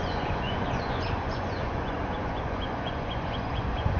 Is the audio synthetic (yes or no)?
yes